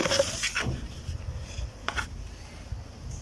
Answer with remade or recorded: recorded